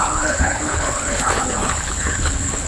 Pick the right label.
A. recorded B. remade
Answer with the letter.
B